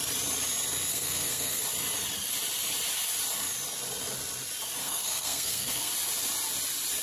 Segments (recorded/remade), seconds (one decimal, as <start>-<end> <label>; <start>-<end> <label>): 0.0-0.9 recorded; 0.9-1.6 remade; 1.6-4.8 recorded; 4.8-5.9 remade; 5.9-7.0 recorded